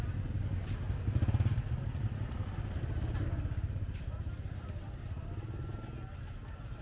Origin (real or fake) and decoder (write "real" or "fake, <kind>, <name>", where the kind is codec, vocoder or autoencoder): real